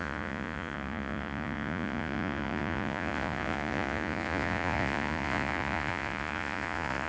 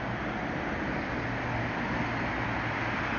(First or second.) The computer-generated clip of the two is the first